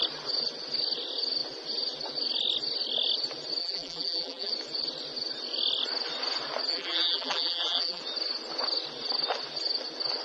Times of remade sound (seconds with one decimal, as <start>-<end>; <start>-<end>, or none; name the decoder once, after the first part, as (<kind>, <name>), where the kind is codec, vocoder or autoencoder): 3.6-4.5 (vocoder, BigVGAN v2); 6.7-8.0